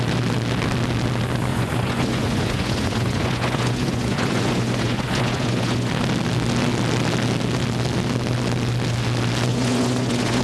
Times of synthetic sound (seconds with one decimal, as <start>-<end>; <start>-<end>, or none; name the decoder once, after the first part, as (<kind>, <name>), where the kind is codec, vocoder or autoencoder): 1.5-5.9 (vocoder, Vocos); 9.5-10.4